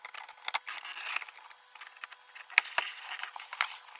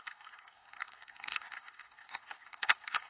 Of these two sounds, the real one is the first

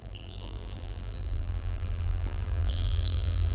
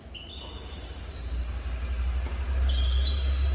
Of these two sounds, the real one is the second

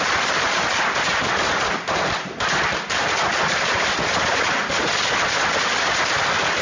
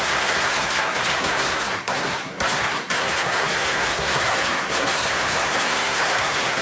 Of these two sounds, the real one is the first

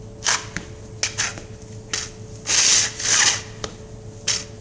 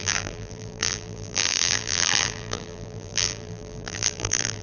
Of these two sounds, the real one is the first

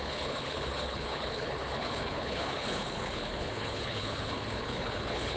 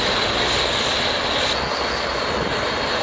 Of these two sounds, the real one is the second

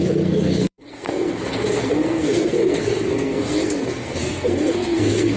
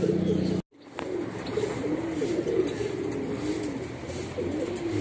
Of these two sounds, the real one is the second